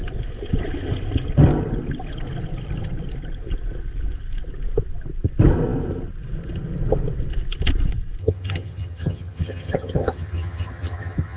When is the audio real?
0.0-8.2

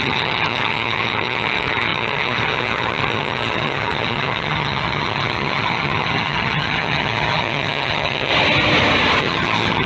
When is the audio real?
8.3-9.2

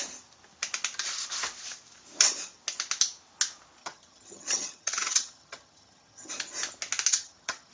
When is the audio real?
0.0-3.8; 6.3-7.1

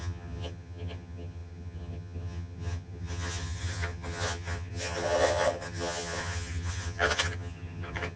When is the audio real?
none

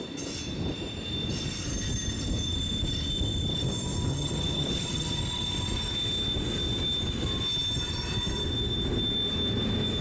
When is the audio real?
0.0-4.1; 5.2-10.0

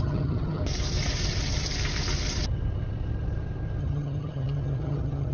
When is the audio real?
0.6-3.8

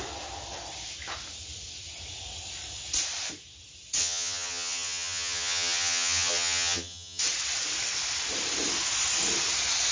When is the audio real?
0.0-4.0; 7.2-9.9

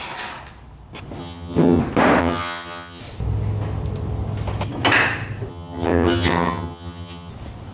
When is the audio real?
0.0-1.2; 1.8-2.2; 3.0-5.5; 7.3-7.7